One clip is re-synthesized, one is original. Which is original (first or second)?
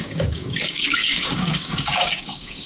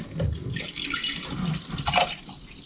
second